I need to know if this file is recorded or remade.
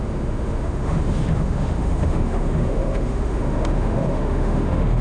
remade